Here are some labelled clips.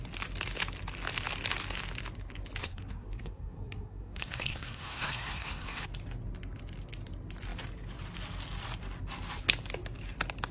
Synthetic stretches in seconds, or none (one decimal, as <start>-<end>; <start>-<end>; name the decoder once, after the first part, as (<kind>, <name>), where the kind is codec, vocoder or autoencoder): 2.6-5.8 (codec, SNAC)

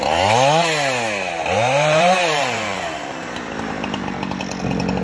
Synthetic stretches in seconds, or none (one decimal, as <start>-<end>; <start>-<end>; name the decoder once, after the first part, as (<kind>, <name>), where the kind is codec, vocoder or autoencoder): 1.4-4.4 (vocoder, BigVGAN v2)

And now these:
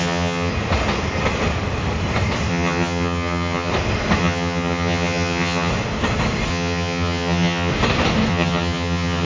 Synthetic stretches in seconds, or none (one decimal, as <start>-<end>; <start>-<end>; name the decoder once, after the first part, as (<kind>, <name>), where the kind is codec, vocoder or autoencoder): 0.0-0.5 (vocoder, HiFi-GAN); 2.5-3.7; 4.2-5.7; 6.5-7.7; 8.3-9.2

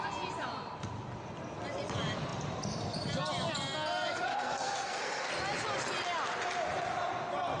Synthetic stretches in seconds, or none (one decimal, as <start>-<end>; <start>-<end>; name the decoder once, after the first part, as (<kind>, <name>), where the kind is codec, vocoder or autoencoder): 4.3-5.3 (codec, SNAC)

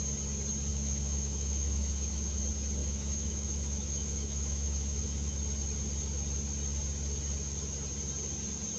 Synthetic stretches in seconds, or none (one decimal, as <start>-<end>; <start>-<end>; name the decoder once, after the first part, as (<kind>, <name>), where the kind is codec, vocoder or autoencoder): 0.7-2.4 (autoencoder, DAC-VAE); 2.8-5.4

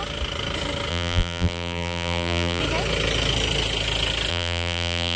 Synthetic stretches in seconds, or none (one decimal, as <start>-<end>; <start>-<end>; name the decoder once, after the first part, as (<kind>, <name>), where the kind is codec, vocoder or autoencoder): 0.9-2.6 (vocoder, BigVGAN v2); 4.3-5.2